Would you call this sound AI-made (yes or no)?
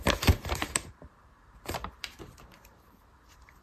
yes